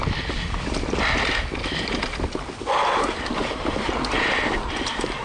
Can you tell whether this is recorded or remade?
recorded